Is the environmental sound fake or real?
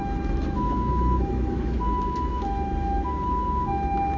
fake